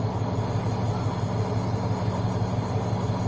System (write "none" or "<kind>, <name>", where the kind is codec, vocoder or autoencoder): none